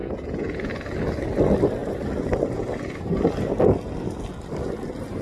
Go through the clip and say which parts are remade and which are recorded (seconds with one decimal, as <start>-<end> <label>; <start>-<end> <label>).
0.0-0.7 remade; 0.7-5.2 recorded